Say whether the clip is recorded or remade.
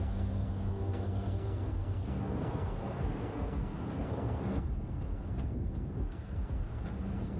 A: remade